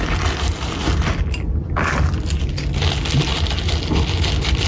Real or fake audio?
real